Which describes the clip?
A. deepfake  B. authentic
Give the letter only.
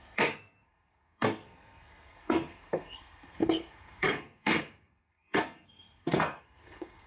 A